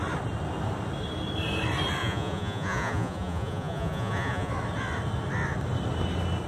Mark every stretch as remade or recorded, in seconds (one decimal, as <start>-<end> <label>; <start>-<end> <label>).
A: 0.0-2.0 recorded; 2.0-4.5 remade; 4.5-6.5 recorded